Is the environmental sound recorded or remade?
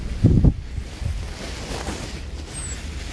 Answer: recorded